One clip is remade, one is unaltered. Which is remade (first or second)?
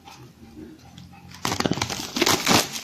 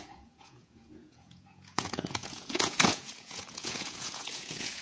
second